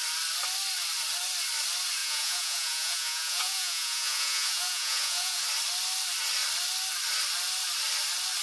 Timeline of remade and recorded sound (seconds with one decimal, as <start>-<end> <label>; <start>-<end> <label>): 0.0-2.0 recorded; 2.0-5.4 remade; 5.4-8.4 recorded